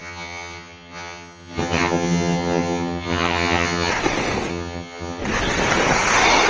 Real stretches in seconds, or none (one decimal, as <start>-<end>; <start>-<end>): 3.9-4.5; 5.2-6.5